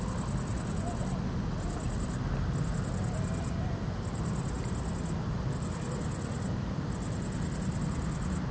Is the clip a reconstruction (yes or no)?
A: no